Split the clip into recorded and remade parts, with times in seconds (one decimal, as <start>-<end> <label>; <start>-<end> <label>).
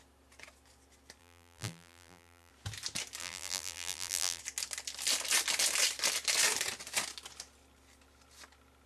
0.0-1.2 recorded; 1.2-2.5 remade; 2.5-3.2 recorded; 3.2-4.4 remade; 4.4-8.9 recorded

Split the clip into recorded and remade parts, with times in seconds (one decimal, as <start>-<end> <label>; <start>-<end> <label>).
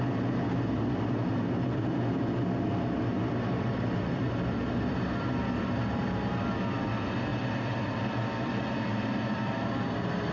0.0-3.1 recorded; 3.1-5.4 remade; 5.4-7.3 recorded; 7.3-10.3 remade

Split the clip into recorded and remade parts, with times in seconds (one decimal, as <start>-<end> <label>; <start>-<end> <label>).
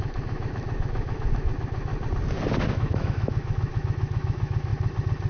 0.0-1.9 remade; 1.9-2.6 recorded; 2.6-4.7 remade; 4.7-5.3 recorded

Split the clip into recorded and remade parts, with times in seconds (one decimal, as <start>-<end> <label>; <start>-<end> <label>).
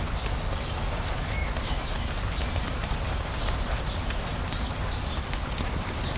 0.0-1.4 recorded; 1.4-4.3 remade; 4.3-6.2 recorded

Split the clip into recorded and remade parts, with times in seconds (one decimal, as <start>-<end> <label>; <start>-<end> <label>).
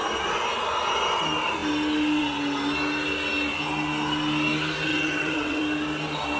0.0-4.9 recorded; 4.9-5.6 remade; 5.6-6.4 recorded